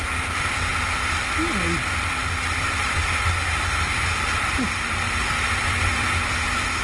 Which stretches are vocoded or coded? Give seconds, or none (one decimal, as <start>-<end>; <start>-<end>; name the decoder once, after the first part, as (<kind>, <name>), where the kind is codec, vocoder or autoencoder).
2.2-6.1 (vocoder, BigVGAN v2)